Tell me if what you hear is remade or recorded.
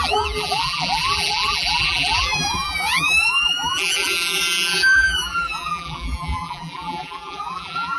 remade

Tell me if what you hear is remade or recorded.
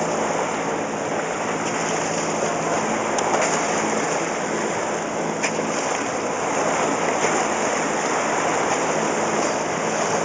recorded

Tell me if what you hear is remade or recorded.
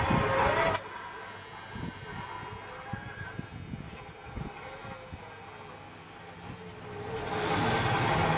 recorded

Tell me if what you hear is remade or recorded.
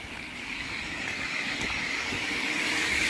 remade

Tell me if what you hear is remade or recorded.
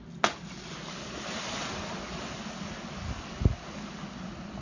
recorded